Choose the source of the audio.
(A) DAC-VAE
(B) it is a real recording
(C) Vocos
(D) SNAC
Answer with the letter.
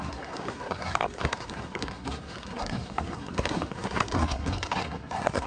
D